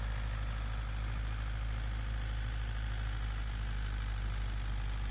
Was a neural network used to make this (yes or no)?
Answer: no